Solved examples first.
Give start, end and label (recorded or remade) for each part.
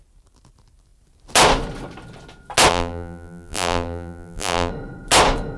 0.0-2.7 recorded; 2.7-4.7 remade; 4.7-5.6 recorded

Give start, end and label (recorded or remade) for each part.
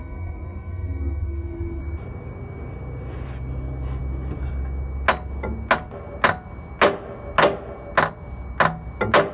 0.0-1.8 remade; 1.8-9.3 recorded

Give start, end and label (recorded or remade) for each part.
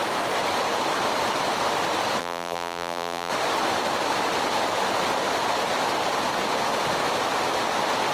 0.0-2.2 recorded; 2.2-3.3 remade; 3.3-8.1 recorded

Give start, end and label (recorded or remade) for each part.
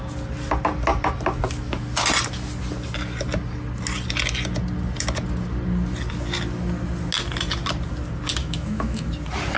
0.0-8.4 recorded; 8.4-9.1 remade; 9.1-9.6 recorded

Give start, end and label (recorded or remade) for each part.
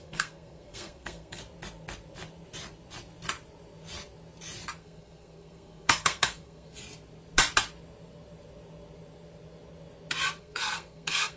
0.0-1.4 remade; 1.4-4.8 recorded; 4.8-6.8 remade; 6.8-10.4 recorded; 10.4-11.4 remade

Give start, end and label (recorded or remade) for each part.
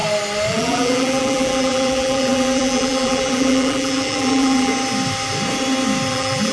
0.0-0.5 recorded; 0.5-4.7 remade; 4.7-6.1 recorded; 6.1-6.5 remade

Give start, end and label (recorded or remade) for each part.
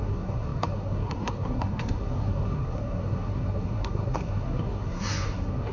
0.0-5.7 remade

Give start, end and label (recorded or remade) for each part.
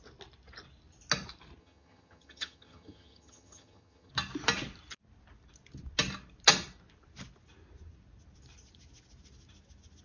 0.0-1.6 recorded; 1.6-4.1 remade; 4.1-10.0 recorded